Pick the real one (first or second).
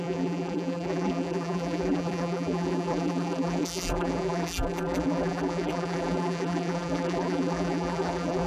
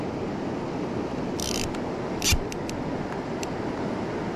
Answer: second